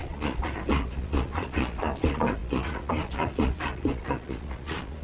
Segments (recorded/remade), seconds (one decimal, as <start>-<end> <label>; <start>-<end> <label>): 0.0-5.0 remade